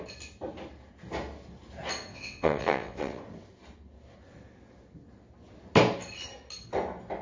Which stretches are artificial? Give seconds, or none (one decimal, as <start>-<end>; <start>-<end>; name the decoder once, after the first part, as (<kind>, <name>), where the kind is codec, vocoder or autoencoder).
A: 2.1-3.2 (vocoder, WaveNeXt)